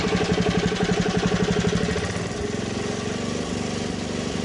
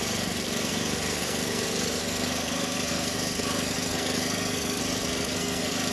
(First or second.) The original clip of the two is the first